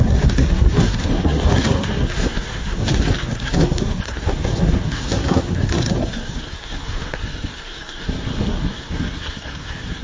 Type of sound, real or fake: fake